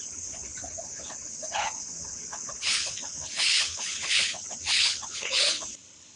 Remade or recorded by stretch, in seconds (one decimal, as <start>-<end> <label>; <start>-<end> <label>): 0.0-6.2 remade